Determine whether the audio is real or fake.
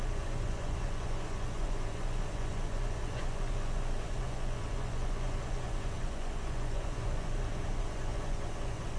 fake